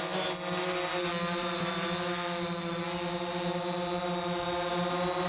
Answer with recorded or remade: recorded